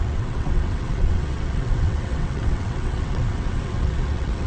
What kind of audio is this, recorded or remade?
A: remade